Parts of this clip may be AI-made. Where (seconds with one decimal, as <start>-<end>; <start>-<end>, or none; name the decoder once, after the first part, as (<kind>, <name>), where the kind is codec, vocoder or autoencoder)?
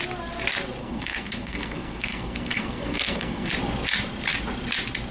0.8-3.5 (codec, SNAC)